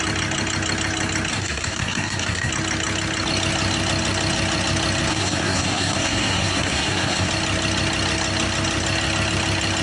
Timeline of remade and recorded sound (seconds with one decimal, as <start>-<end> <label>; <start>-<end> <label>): 0.0-1.3 recorded; 1.3-2.5 remade; 2.5-5.1 recorded; 5.1-7.3 remade; 7.3-9.8 recorded